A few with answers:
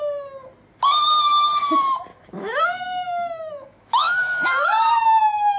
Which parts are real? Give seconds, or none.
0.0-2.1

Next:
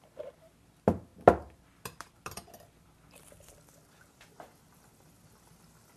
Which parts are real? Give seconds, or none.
0.0-6.0

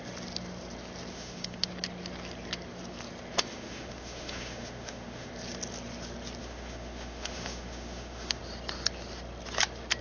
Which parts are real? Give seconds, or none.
0.0-1.1; 1.7-3.5; 5.3-6.4; 8.4-10.0

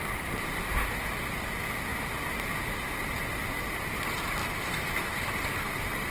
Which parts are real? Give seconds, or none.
0.0-4.4; 5.3-6.1

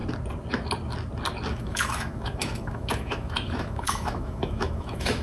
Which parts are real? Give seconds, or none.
0.0-1.5

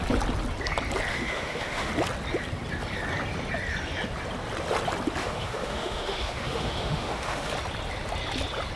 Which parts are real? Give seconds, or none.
0.0-1.1; 1.9-5.2; 7.5-8.8

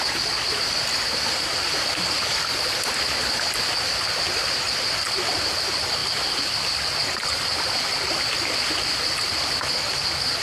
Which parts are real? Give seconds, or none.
0.0-10.4

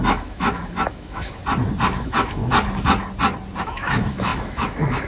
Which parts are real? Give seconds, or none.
1.4-2.0; 2.4-3.6